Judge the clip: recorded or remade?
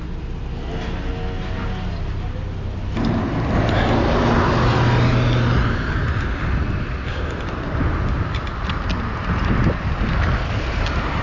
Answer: recorded